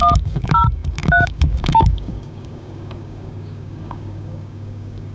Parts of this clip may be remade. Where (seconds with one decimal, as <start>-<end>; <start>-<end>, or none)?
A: 0.0-5.1

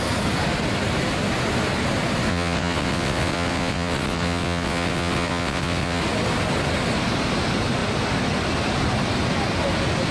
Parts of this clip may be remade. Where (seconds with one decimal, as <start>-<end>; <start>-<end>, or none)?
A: 2.3-6.0